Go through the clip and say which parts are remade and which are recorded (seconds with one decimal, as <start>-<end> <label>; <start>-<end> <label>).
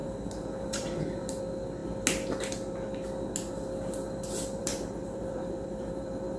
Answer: 0.0-1.4 remade; 1.4-4.6 recorded; 4.6-6.4 remade